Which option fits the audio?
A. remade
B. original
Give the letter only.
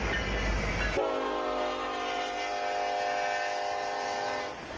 B